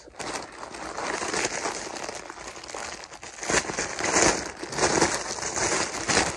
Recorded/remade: recorded